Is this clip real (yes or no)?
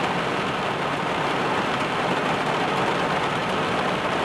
yes